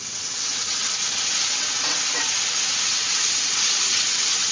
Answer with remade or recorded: remade